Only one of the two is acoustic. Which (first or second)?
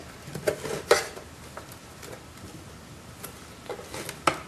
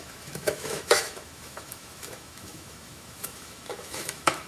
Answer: first